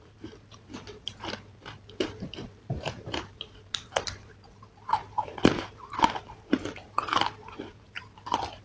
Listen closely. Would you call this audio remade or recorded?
remade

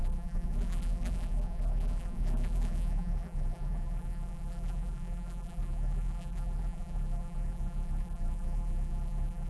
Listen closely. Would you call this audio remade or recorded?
remade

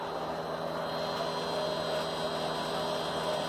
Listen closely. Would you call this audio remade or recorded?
recorded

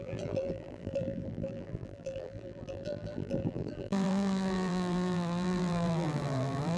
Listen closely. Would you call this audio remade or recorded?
remade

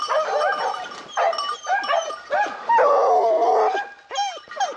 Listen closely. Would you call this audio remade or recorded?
recorded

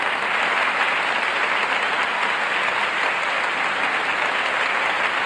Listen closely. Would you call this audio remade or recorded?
recorded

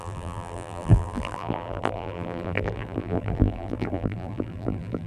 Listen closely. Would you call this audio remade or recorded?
remade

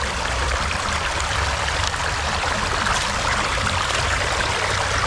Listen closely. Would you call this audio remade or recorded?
remade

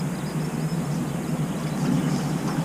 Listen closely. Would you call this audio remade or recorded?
recorded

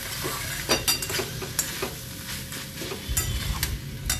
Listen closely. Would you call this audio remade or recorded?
recorded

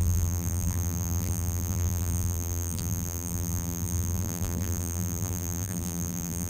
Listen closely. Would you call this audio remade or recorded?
remade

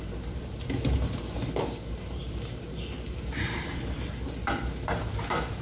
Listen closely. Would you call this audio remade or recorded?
remade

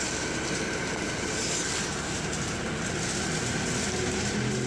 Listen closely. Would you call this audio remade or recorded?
recorded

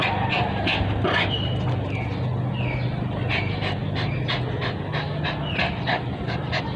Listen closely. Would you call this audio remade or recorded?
recorded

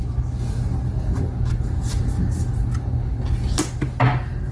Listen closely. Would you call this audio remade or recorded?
recorded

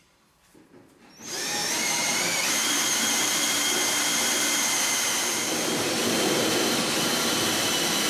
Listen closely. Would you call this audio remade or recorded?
remade